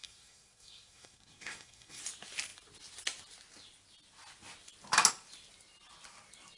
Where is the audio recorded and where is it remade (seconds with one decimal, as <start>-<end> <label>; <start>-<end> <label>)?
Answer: 0.0-2.0 remade; 2.0-6.6 recorded